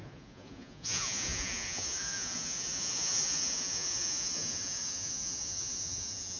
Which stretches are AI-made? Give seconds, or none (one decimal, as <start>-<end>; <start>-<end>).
0.0-6.4